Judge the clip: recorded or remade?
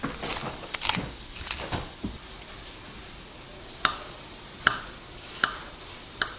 recorded